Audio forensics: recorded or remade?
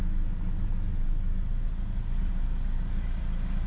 recorded